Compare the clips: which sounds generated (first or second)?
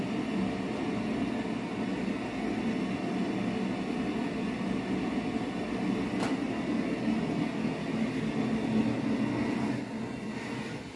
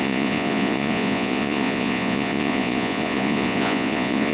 second